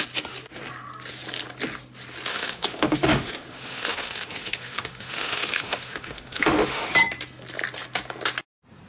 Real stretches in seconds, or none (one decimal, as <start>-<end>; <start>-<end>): 0.0-2.3; 6.9-8.9